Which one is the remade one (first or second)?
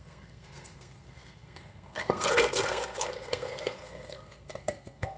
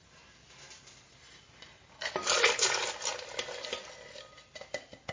first